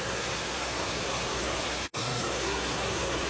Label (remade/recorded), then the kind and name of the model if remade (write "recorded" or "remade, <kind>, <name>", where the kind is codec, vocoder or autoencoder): remade, codec, SNAC